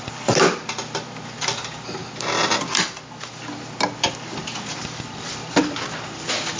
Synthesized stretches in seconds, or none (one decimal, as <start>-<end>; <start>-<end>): 0.0-2.0; 4.4-6.6